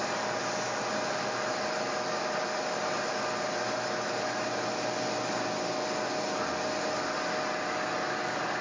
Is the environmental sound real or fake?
real